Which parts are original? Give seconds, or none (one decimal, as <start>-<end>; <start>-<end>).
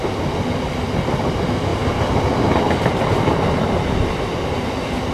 0.0-5.1